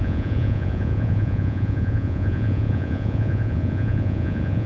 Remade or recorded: remade